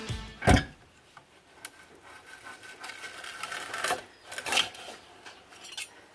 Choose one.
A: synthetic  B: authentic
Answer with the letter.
B